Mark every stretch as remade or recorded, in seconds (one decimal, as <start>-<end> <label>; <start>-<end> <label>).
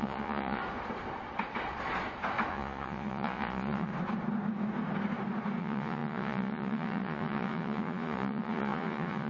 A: 0.0-0.6 remade; 0.6-2.5 recorded; 2.5-3.9 remade; 3.9-5.6 recorded; 5.6-9.3 remade